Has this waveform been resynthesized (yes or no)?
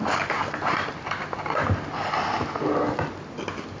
no